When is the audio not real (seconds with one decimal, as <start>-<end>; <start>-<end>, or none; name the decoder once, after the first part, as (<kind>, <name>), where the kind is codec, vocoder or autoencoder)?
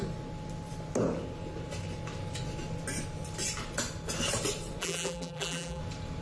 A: 4.8-5.8 (vocoder, BigVGAN v2)